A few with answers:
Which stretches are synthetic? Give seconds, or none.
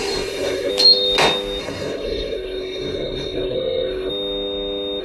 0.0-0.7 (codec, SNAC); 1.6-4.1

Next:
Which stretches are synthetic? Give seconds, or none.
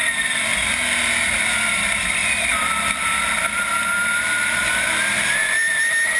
none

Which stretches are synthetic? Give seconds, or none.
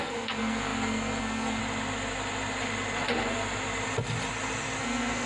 0.0-1.6 (codec, SNAC); 4.8-5.3